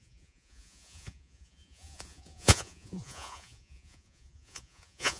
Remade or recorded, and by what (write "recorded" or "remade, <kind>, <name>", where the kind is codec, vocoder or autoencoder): remade, vocoder, Vocos